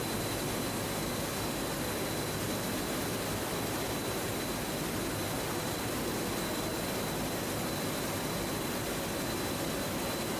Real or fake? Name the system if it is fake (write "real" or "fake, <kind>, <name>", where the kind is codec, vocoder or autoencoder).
real